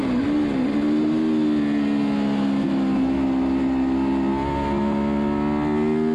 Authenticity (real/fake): real